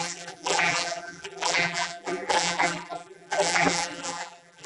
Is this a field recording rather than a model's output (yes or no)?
no